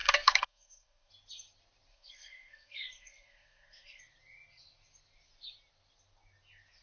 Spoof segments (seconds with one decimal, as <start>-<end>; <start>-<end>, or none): 0.0-1.1; 1.9-4.0